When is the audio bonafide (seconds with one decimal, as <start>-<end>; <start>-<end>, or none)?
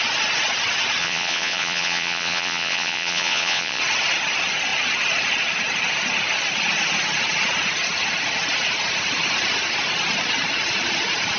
0.0-1.0; 3.8-11.4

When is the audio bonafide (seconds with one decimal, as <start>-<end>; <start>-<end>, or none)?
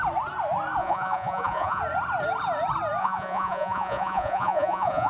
0.0-0.8; 1.8-3.0